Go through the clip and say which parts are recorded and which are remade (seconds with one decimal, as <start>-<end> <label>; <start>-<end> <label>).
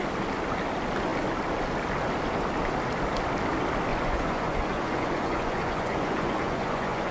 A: 0.0-3.9 recorded; 3.9-7.1 remade